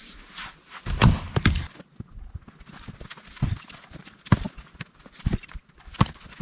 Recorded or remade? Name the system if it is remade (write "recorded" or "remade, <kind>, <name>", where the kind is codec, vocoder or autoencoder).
recorded